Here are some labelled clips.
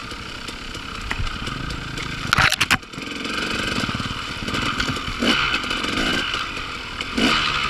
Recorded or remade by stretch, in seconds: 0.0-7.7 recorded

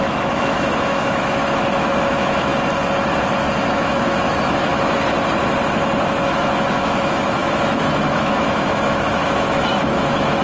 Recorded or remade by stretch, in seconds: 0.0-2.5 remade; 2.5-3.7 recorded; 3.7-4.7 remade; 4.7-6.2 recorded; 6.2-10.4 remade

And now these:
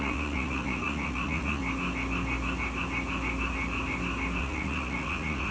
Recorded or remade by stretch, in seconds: 0.0-1.6 remade; 1.6-4.4 recorded; 4.4-5.5 remade